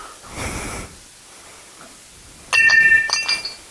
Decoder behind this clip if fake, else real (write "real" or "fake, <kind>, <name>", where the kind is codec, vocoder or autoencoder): real